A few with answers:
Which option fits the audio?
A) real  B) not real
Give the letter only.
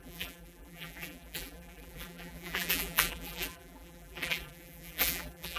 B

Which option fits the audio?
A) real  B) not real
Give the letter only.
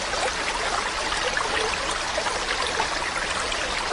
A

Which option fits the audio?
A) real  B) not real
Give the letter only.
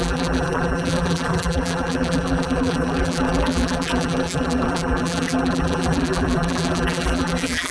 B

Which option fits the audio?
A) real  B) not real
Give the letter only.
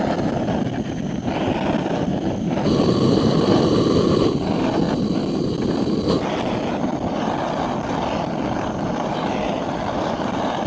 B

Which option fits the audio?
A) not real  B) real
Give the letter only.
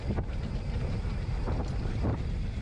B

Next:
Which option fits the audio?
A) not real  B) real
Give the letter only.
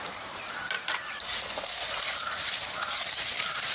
A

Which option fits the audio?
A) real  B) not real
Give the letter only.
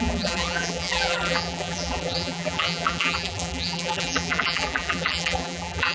B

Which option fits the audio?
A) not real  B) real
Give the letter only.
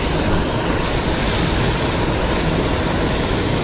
B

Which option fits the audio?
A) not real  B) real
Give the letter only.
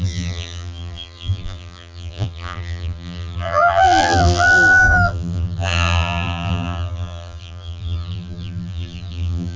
A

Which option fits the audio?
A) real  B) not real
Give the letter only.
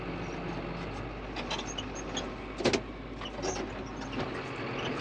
A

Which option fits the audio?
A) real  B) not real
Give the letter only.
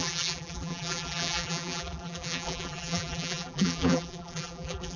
B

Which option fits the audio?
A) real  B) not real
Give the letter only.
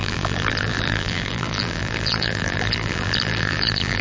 B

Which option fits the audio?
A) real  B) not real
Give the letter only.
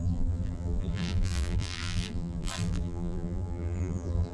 B